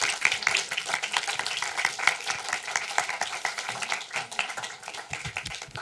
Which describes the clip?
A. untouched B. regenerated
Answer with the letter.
B